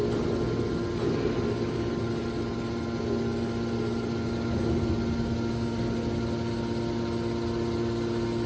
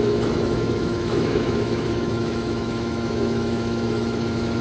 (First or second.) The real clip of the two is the first